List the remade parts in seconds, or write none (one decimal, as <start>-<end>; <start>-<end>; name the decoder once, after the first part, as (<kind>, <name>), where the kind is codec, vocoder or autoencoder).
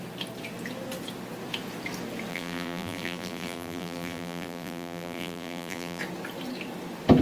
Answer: 2.3-6.0 (vocoder, BigVGAN v2)